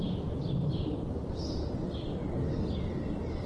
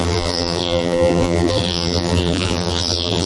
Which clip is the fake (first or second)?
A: second